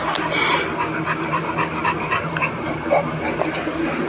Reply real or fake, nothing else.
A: real